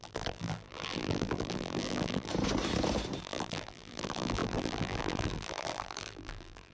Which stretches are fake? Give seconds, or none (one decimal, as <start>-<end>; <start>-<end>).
0.0-2.3; 3.2-6.7